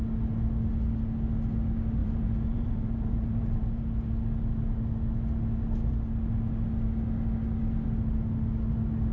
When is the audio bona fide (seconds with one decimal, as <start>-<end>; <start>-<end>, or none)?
0.0-2.0; 3.8-9.1